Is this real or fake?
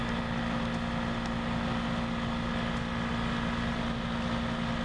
real